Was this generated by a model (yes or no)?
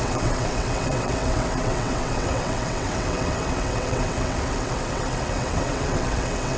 yes